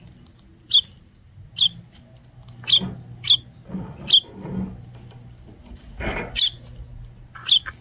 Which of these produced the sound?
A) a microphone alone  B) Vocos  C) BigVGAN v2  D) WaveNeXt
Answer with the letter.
A